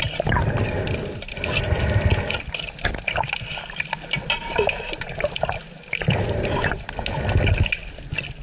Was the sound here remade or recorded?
recorded